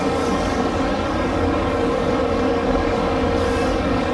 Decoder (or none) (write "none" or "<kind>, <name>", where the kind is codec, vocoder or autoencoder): codec, DAC